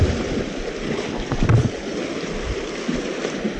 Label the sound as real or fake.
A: real